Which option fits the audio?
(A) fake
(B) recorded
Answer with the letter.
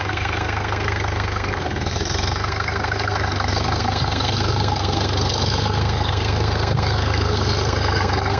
A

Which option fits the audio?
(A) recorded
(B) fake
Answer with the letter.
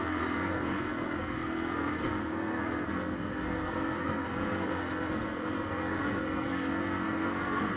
B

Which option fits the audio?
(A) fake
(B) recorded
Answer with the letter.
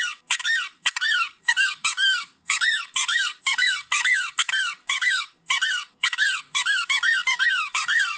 A